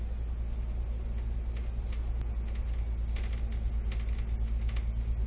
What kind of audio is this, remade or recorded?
recorded